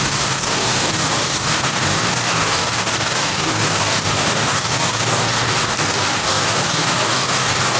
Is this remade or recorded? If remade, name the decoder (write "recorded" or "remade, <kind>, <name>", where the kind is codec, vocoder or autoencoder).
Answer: remade, codec, DAC